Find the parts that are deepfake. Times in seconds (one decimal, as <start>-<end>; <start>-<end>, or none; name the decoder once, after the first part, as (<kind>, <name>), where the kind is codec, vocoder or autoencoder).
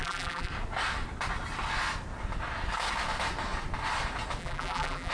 0.0-0.5 (vocoder, BigVGAN v2); 4.4-5.1